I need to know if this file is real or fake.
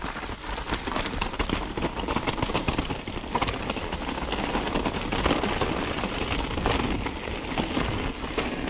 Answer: real